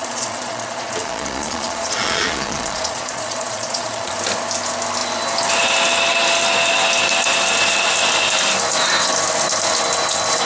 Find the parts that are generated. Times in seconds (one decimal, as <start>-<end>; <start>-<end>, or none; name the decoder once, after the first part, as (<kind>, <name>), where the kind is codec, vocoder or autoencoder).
0.0-4.1 (vocoder, Vocos)